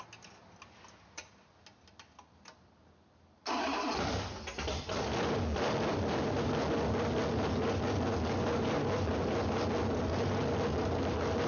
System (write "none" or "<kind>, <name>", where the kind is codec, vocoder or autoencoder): none